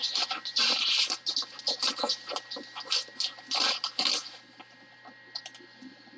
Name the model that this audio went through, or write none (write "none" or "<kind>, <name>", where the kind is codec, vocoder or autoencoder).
none